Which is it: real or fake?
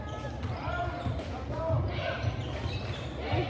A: real